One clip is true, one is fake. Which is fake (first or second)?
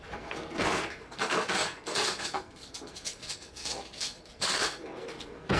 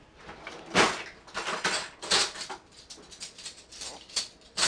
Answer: first